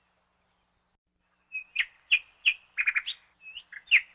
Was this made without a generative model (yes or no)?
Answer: yes